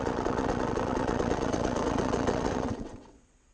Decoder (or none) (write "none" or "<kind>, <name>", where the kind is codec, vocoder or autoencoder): vocoder, WaveNeXt